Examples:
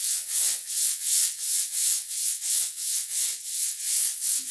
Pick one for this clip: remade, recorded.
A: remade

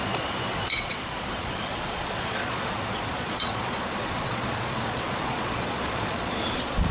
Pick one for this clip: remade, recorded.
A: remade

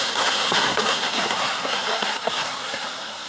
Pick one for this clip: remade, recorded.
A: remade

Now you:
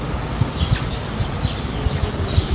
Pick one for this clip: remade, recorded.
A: recorded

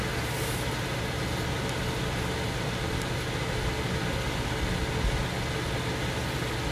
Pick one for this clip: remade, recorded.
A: recorded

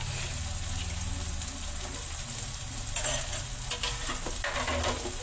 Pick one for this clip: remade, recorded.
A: recorded